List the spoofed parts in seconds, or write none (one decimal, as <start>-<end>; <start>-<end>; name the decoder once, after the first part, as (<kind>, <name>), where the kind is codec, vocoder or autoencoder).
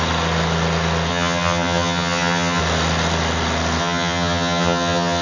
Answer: 1.1-2.6 (vocoder, HiFi-GAN); 3.8-5.2